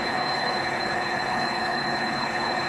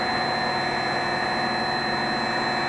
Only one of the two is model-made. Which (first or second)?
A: first